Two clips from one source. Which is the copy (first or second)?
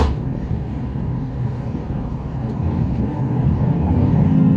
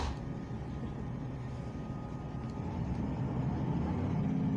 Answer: first